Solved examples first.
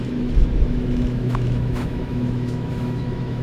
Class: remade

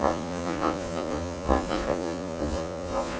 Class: remade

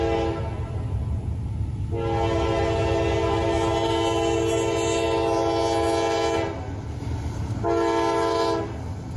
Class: recorded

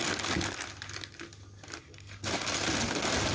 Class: recorded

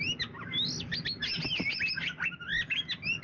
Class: recorded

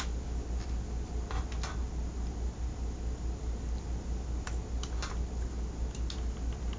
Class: recorded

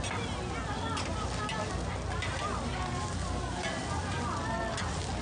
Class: recorded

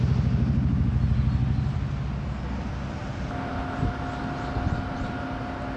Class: recorded